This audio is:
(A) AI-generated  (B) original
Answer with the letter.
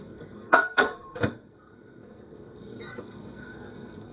A